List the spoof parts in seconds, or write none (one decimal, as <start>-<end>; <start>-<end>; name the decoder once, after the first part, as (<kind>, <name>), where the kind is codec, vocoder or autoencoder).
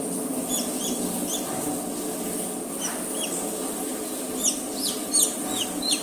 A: none